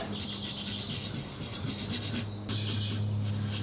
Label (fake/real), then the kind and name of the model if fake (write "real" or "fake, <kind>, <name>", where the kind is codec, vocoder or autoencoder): real